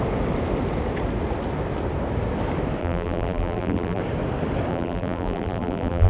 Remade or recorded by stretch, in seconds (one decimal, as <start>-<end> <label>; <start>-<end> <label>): 0.0-2.8 recorded; 2.8-4.0 remade; 4.0-4.7 recorded; 4.7-6.1 remade